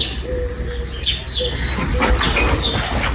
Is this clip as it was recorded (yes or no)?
yes